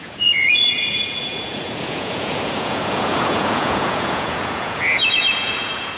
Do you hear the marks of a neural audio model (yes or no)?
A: yes